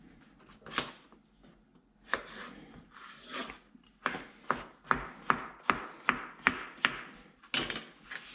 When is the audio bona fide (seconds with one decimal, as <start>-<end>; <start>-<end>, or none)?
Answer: 0.0-8.3

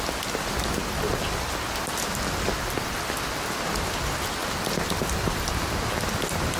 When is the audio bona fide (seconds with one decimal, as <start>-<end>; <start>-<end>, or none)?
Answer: 0.0-6.6

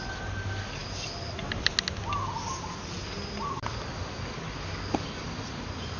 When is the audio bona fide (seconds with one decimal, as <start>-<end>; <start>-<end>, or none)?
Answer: 0.0-6.0

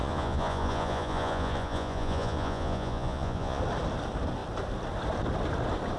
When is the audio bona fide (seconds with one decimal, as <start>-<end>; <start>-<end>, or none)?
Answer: 3.6-6.0